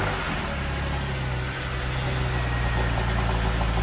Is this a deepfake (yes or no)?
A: no